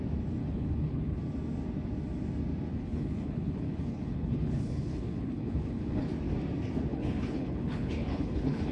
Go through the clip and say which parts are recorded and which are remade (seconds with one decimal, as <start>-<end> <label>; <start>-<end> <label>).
0.0-0.4 recorded; 0.4-1.2 remade; 1.2-2.7 recorded; 2.7-6.0 remade; 6.0-6.9 recorded; 6.9-8.7 remade